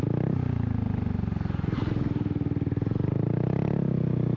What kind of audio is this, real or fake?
real